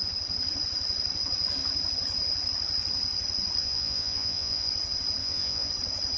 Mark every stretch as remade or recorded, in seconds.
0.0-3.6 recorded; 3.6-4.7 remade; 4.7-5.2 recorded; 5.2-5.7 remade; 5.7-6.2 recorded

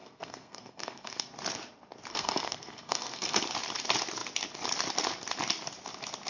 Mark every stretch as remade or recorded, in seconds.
0.0-1.3 remade; 1.3-2.1 recorded; 2.1-3.4 remade; 3.4-6.3 recorded